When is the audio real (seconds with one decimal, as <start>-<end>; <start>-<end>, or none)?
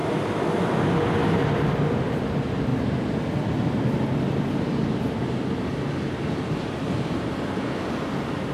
0.0-8.5